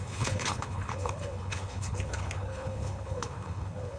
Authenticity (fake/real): fake